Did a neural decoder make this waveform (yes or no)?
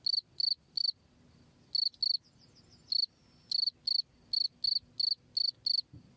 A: no